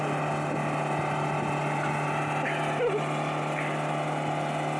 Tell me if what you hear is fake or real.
real